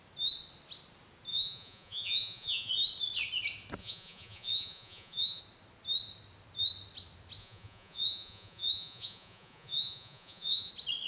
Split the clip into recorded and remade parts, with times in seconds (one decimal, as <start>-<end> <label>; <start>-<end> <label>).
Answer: 0.0-1.3 recorded; 1.3-2.7 remade; 2.7-3.8 recorded; 3.8-5.4 remade; 5.4-7.4 recorded; 7.4-10.7 remade; 10.7-11.1 recorded